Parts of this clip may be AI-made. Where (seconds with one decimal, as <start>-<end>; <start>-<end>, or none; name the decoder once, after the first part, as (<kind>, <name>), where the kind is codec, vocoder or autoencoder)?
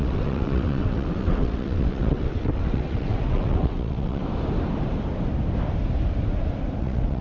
0.0-4.2 (vocoder, WaveNeXt); 6.8-7.2